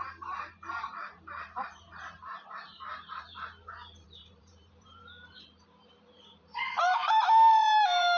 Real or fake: fake